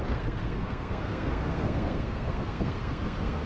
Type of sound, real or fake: fake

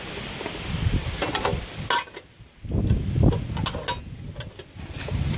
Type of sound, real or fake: real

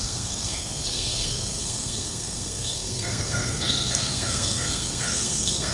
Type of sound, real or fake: fake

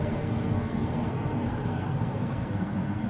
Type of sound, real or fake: fake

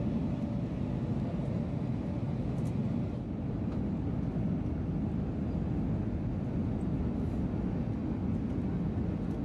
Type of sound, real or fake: real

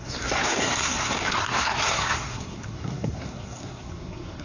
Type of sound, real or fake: fake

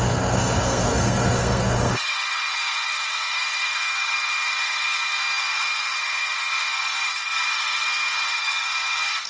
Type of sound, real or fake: fake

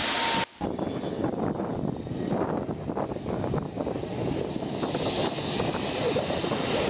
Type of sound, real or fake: real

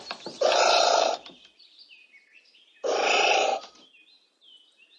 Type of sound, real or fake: real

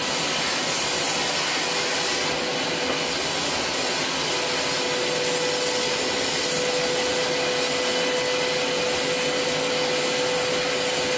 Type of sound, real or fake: real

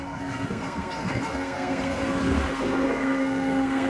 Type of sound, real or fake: fake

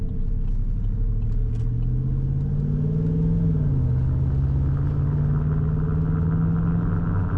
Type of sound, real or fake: real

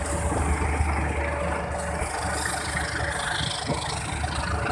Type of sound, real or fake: real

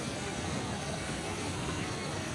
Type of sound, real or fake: fake